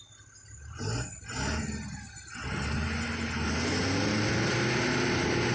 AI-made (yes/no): no